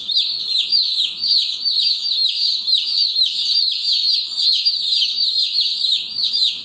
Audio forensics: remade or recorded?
remade